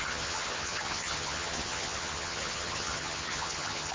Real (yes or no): no